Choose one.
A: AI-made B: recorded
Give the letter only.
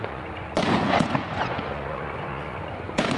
A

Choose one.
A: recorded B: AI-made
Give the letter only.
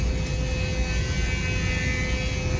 A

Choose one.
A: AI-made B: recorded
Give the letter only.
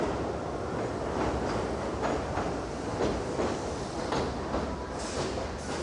B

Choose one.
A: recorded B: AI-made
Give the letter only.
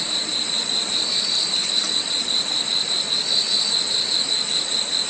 A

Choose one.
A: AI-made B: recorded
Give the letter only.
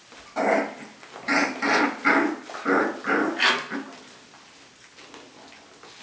B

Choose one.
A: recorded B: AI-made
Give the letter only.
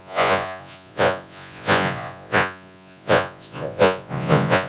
B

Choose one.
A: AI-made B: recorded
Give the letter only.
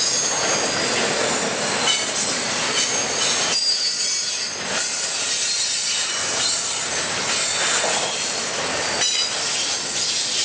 B